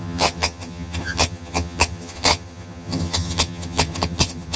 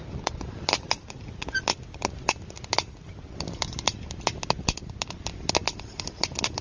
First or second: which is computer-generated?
first